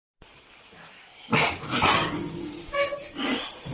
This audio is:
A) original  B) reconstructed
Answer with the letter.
A